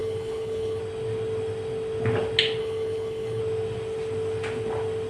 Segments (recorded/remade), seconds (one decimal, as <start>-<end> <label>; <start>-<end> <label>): 0.0-0.8 remade; 0.8-2.6 recorded; 2.6-3.4 remade; 3.4-5.1 recorded